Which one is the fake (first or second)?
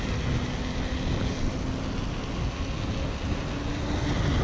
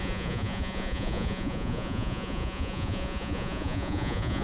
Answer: second